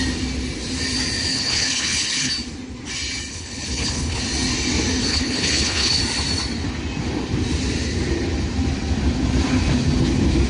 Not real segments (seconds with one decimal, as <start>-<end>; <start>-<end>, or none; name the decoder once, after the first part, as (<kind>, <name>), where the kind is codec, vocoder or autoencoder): 1.3-2.3 (codec, HILCodec); 3.3-4.2; 5.1-6.0